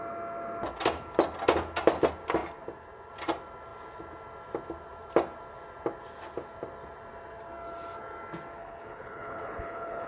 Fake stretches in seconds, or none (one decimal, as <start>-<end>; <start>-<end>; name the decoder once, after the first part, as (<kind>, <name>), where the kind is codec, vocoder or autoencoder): 8.6-10.1 (codec, HILCodec)